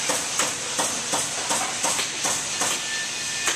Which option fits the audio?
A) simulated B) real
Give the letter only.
B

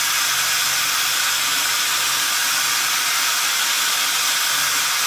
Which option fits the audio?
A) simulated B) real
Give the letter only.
B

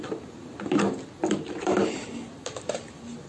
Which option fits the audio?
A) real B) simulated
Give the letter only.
A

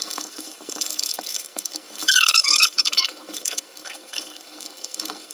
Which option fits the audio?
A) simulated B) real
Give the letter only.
A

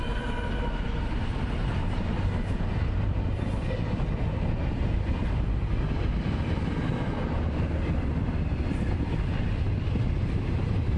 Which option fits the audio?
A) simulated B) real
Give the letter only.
B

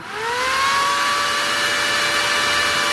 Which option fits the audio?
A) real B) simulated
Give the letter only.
A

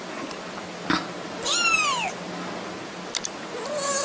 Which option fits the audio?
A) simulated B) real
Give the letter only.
B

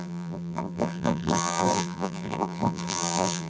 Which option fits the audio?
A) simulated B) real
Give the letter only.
A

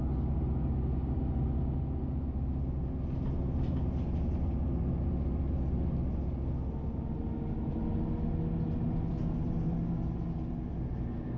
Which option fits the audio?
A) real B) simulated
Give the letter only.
A